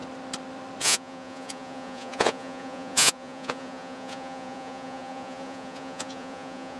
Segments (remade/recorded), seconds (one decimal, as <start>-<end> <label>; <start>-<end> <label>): 0.0-0.8 recorded; 0.8-6.8 remade